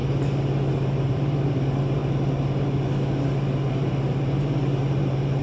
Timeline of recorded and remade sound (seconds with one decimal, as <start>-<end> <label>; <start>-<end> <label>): 0.0-0.7 recorded; 0.7-2.0 remade; 2.0-3.7 recorded; 3.7-5.4 remade